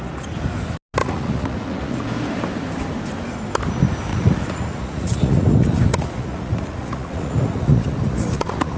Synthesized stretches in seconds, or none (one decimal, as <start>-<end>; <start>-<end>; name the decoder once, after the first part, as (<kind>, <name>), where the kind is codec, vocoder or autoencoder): 1.0-2.0 (vocoder, Vocos); 4.1-8.8